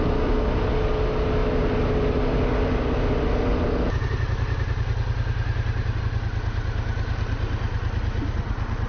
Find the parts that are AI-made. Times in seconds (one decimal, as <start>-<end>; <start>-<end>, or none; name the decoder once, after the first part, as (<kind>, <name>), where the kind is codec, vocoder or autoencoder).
none